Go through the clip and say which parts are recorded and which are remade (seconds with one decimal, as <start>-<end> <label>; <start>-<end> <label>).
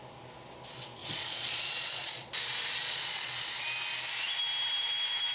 0.0-1.0 recorded; 1.0-2.3 remade; 2.3-2.8 recorded; 2.8-3.3 remade; 3.3-5.3 recorded